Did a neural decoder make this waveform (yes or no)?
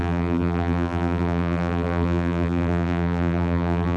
yes